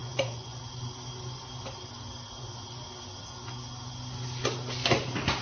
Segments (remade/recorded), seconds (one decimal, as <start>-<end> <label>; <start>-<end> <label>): 0.0-0.6 remade; 0.6-5.4 recorded